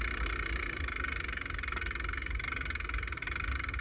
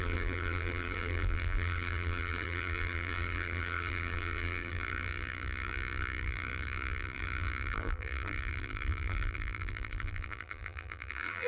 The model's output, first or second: second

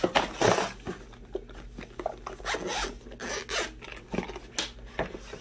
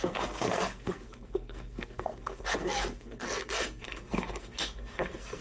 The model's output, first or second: second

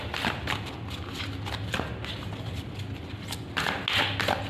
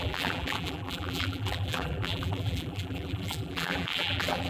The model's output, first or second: second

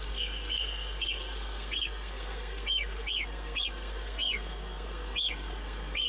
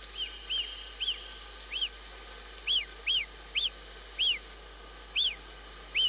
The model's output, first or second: first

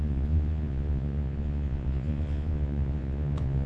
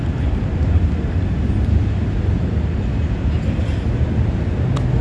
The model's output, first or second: first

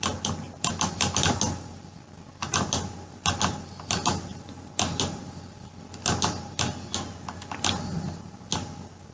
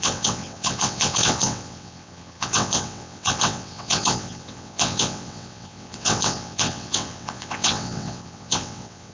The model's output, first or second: second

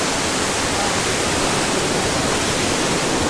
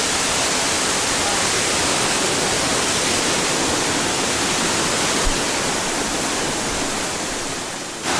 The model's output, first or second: first